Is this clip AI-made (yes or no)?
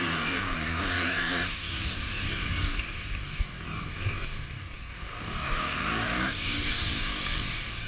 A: yes